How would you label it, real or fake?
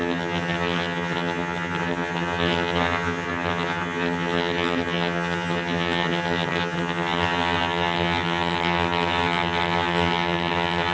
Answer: fake